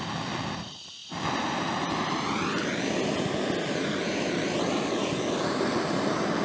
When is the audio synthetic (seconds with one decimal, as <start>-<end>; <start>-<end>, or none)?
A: none